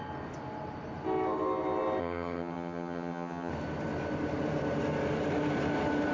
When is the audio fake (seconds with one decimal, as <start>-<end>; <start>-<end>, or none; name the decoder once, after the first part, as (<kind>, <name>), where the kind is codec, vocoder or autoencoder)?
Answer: 2.0-3.5 (vocoder, HiFi-GAN)